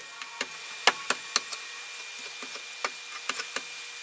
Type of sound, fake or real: real